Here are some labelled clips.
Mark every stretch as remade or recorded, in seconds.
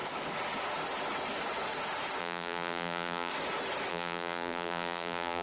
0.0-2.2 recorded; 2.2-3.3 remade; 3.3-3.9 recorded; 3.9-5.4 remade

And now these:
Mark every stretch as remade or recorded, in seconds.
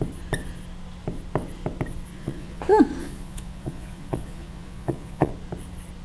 0.0-2.1 recorded; 2.1-2.6 remade; 2.6-3.0 recorded; 3.0-5.3 remade; 5.3-6.0 recorded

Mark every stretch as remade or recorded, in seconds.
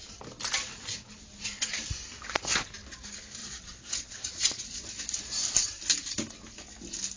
0.0-3.4 recorded; 3.4-4.9 remade; 4.9-7.2 recorded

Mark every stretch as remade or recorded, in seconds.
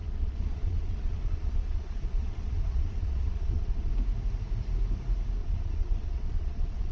0.0-3.9 remade; 3.9-5.4 recorded; 5.4-6.9 remade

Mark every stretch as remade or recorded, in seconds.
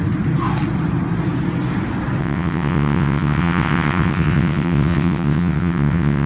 0.0-2.2 recorded; 2.2-6.3 remade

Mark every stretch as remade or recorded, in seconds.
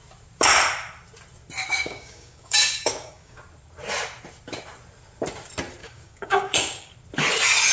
0.0-1.6 recorded; 1.6-3.4 remade; 3.4-5.8 recorded; 5.8-6.9 remade; 6.9-7.7 recorded